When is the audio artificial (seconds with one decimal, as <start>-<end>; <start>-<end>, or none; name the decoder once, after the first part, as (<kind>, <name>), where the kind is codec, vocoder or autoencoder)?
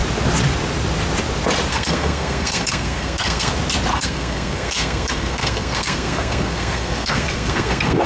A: 1.7-3.5 (codec, SNAC); 3.9-8.1